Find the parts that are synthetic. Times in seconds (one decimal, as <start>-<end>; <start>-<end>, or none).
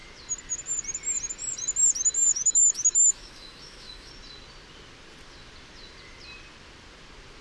2.3-4.1